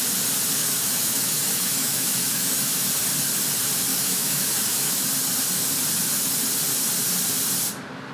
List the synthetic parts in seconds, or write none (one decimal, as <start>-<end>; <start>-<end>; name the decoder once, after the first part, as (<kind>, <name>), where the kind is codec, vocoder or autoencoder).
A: 0.6-2.9 (autoencoder, DAC-VAE); 3.9-5.1